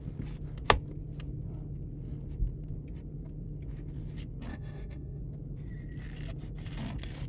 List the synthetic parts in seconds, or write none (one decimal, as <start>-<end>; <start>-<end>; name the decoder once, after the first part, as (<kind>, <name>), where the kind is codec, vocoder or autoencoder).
4.5-5.2 (autoencoder, DAC-VAE)